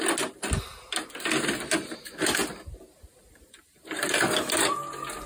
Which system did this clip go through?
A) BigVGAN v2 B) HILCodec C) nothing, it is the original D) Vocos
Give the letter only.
C